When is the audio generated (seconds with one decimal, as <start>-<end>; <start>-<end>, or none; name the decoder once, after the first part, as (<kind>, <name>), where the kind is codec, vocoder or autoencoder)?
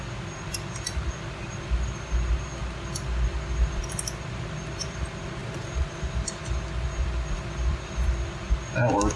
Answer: 5.4-6.3 (vocoder, BigVGAN v2)